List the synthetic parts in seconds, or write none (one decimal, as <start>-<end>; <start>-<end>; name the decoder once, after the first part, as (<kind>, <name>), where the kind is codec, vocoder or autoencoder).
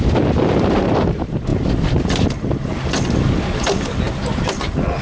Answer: 0.0-5.0 (vocoder, BigVGAN v2)